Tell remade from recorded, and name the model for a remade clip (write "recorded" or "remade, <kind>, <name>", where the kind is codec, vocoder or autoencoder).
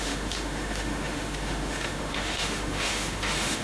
remade, autoencoder, DAC-VAE